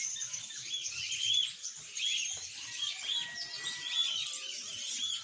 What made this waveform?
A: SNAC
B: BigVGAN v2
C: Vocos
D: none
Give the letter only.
D